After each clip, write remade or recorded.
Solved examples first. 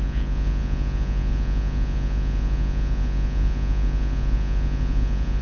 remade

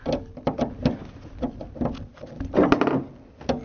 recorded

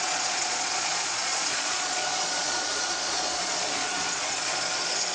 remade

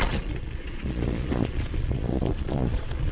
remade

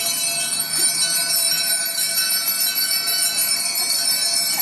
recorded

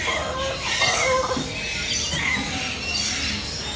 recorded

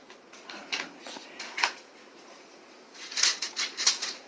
remade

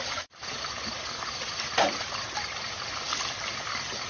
recorded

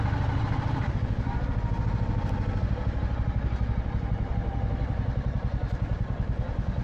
recorded